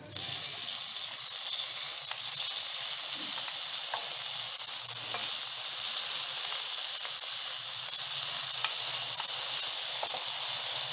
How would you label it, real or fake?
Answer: real